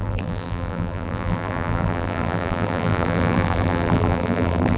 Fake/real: fake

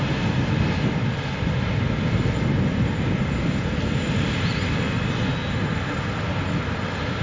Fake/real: real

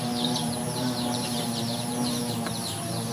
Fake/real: fake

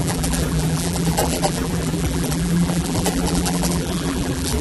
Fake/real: fake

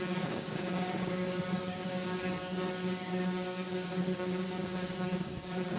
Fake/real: fake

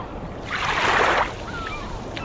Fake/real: real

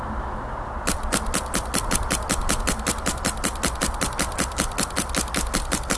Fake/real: real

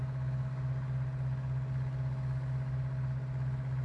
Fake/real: real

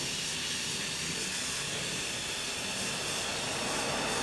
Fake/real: real